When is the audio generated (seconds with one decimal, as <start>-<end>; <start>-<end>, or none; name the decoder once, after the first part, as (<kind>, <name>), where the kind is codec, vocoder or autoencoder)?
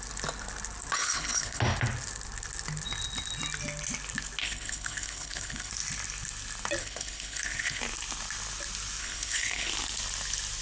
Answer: 1.0-1.6 (codec, HILCodec); 4.4-5.7; 6.8-7.8; 9.0-9.7